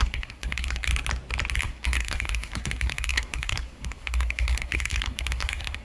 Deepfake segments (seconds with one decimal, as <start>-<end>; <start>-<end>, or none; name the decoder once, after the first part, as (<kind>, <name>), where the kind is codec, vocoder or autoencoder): 0.0-0.9 (codec, SNAC); 1.6-5.8

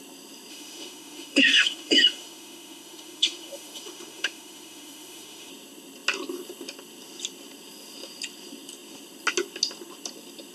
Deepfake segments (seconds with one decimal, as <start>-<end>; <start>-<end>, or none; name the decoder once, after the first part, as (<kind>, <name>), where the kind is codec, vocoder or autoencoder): 0.5-5.5 (autoencoder, DAC-VAE)

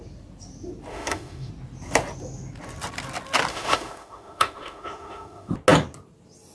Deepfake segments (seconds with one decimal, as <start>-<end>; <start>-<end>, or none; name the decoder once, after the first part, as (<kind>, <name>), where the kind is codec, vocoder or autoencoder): 0.9-1.5 (autoencoder, DAC-VAE); 3.5-5.5

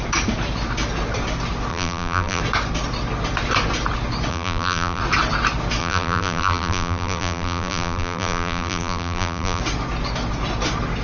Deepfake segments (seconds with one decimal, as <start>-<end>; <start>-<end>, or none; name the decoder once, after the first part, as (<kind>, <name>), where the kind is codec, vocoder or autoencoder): 1.7-2.4 (vocoder, BigVGAN v2); 4.3-5.0; 5.8-9.6